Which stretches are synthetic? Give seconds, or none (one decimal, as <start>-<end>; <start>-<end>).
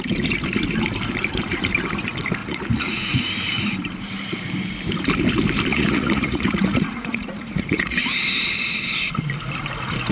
2.4-3.2; 5.7-8.0